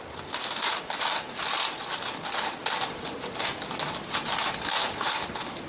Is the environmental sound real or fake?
real